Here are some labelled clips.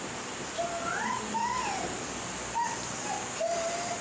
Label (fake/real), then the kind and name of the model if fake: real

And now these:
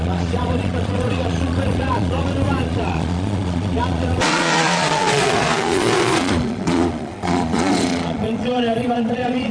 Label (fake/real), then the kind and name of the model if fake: fake, vocoder, Vocos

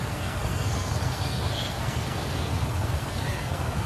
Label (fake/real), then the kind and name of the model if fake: fake, codec, SNAC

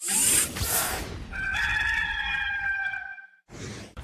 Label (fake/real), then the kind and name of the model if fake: fake, vocoder, BigVGAN v2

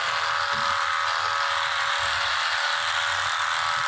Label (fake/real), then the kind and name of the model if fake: real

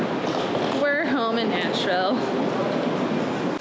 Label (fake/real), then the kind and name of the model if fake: real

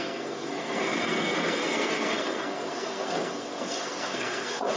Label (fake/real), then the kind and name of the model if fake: fake, codec, SNAC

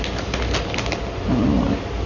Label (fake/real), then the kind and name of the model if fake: real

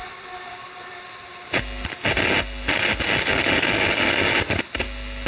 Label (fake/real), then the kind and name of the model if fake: real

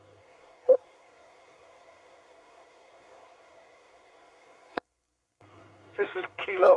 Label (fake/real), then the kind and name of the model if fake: fake, codec, SNAC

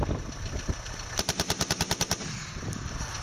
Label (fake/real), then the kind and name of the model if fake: real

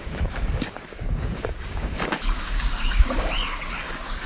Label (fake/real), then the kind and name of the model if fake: fake, codec, DAC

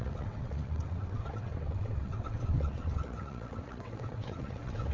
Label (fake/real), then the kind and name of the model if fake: fake, vocoder, WaveNeXt